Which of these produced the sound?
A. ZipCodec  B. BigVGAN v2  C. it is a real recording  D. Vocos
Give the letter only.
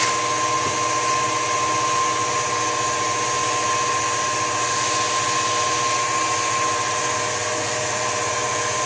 C